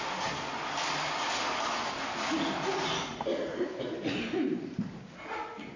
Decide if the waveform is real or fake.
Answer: real